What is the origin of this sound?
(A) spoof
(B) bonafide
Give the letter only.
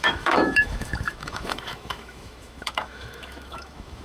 A